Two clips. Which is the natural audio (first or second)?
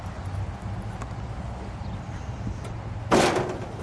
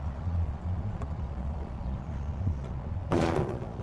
first